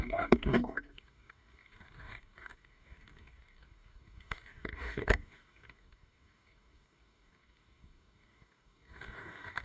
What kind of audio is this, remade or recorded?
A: remade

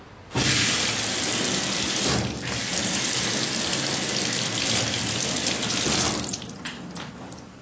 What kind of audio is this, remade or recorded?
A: recorded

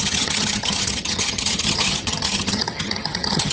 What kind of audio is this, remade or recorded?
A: remade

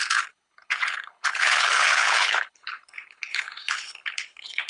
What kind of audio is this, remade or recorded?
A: remade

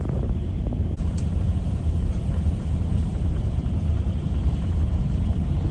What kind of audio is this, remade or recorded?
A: remade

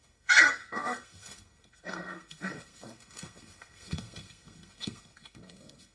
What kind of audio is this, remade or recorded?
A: remade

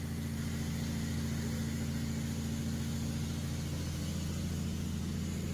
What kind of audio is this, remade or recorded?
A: recorded